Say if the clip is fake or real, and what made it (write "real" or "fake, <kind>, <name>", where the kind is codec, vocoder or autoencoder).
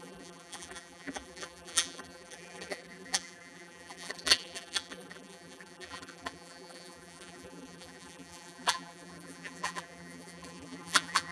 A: fake, vocoder, BigVGAN v2